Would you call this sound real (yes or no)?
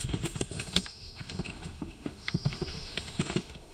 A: no